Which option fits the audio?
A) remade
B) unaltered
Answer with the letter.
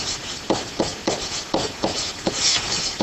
B